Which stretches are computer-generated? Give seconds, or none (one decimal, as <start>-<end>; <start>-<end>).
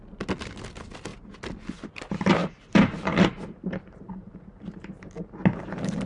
2.4-4.9